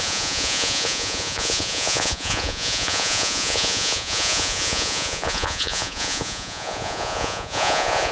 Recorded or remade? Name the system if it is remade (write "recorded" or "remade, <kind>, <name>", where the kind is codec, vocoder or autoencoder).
remade, vocoder, Vocos